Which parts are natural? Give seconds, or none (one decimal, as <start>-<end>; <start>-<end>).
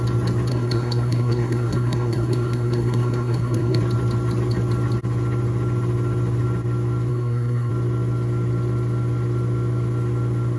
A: 0.0-0.5; 3.8-7.1; 7.7-10.6